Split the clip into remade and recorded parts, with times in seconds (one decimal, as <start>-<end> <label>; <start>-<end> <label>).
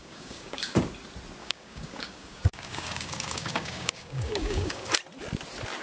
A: 0.0-0.8 remade; 0.8-1.4 recorded; 1.4-4.9 remade; 4.9-5.8 recorded